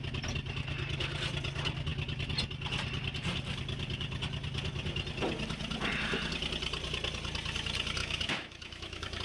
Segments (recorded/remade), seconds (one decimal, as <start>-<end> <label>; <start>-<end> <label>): 0.0-8.0 recorded; 8.0-9.2 remade